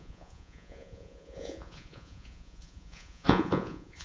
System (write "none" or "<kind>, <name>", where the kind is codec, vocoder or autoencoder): vocoder, Vocos